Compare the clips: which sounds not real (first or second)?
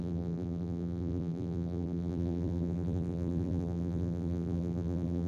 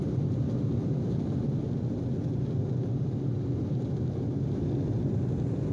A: first